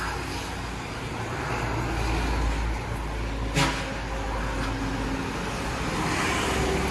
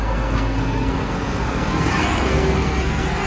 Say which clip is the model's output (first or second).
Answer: second